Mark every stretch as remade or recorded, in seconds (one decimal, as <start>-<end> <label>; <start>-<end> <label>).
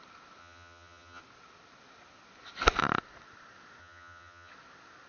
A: 0.0-0.4 recorded; 0.4-1.2 remade; 1.2-3.8 recorded; 3.8-4.5 remade; 4.5-5.1 recorded